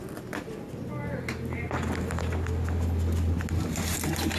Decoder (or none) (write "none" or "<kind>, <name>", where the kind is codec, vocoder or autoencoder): none